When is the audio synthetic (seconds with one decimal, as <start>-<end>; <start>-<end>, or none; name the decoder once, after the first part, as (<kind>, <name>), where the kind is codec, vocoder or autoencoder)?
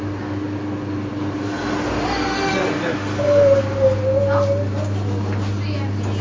none